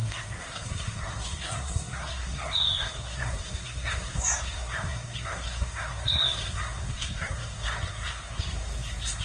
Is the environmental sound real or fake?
fake